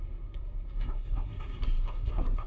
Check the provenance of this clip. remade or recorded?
remade